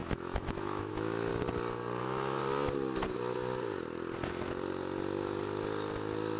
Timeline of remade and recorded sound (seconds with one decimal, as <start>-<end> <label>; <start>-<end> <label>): 0.0-1.3 remade; 1.3-2.0 recorded; 2.0-2.4 remade; 2.4-6.4 recorded